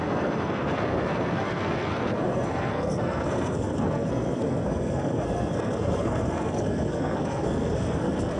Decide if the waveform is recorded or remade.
remade